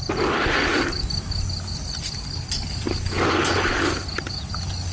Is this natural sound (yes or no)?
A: yes